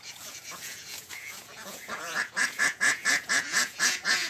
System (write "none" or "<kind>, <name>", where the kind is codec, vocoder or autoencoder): vocoder, Vocos